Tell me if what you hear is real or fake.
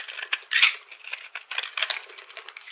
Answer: real